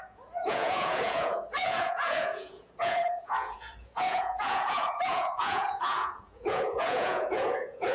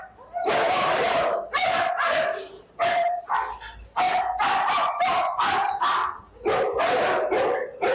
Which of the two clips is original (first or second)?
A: second